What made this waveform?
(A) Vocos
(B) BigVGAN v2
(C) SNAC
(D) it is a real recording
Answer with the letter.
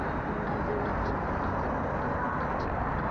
D